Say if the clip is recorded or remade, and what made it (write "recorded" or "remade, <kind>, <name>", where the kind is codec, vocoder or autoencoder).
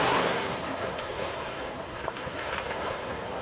remade, codec, SNAC